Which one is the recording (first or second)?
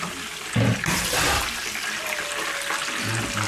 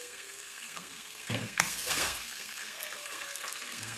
first